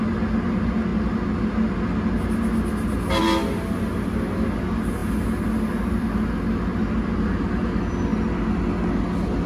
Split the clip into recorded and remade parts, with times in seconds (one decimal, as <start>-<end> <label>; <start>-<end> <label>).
0.0-9.5 recorded